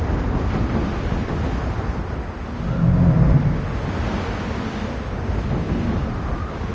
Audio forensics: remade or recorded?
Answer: recorded